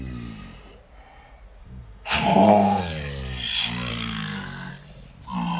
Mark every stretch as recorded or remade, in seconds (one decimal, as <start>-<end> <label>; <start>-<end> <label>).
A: 0.0-1.6 recorded; 1.6-2.8 remade; 2.8-3.9 recorded; 3.9-4.7 remade; 4.7-5.6 recorded